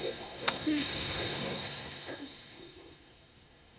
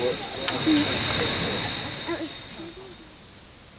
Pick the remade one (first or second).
first